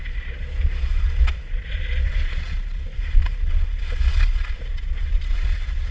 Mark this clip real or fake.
fake